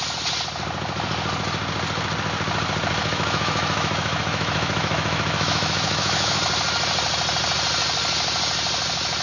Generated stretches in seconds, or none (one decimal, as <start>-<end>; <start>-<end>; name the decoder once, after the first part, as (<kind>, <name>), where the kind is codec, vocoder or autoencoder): 3.0-6.4 (autoencoder, DAC-VAE)